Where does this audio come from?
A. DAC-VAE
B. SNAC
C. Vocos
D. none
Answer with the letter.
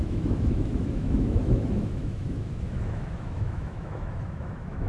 A